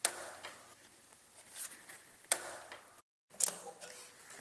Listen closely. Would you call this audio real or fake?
fake